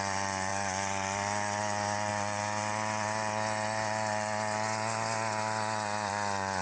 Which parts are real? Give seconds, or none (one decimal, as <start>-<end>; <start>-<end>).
0.0-6.6